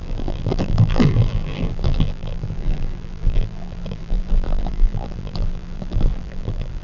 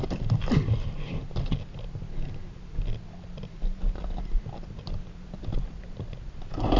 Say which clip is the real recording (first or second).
second